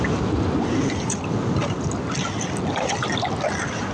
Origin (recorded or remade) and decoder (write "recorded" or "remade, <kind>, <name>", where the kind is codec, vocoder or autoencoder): recorded